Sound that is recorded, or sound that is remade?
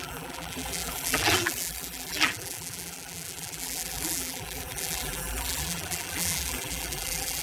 remade